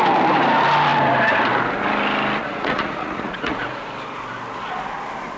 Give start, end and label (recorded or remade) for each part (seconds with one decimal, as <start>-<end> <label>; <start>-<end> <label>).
0.0-2.4 recorded; 2.4-3.9 remade; 3.9-5.4 recorded